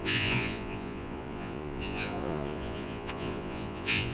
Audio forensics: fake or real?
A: fake